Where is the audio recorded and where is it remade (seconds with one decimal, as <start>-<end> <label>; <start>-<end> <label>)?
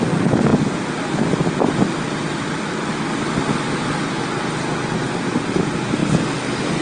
0.0-6.8 recorded